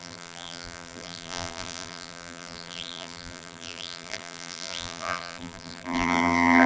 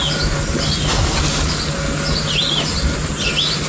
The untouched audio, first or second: second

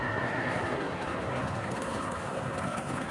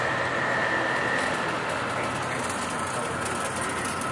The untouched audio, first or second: second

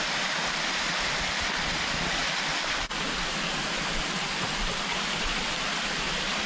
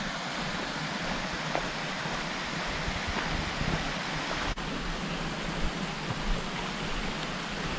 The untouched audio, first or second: second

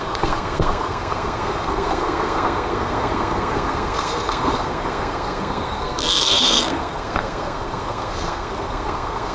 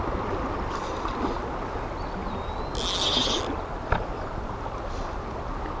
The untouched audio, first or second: second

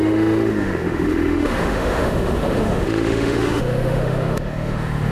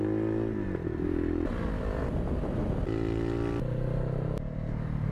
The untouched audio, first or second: second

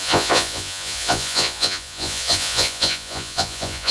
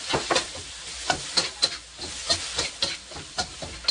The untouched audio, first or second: second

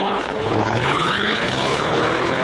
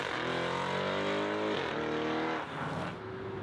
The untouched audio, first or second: second